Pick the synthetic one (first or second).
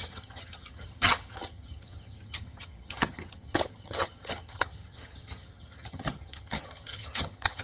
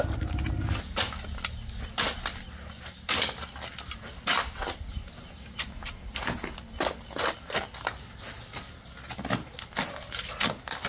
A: first